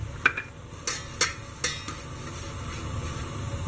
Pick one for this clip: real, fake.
real